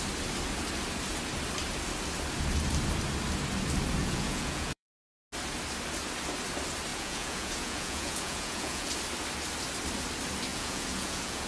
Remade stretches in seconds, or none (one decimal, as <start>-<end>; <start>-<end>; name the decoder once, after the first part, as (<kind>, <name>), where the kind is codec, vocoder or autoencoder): 4.0-5.1 (vocoder, Vocos); 6.9-8.9; 10.5-11.5